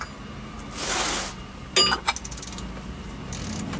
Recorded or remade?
recorded